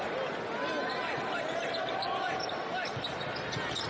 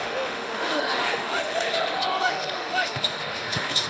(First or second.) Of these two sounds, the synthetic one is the second